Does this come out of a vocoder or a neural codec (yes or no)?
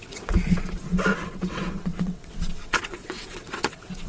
yes